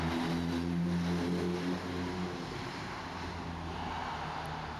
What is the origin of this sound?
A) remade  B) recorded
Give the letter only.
B